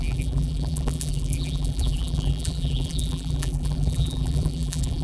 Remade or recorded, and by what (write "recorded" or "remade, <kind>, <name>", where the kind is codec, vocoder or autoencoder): remade, vocoder, BigVGAN v2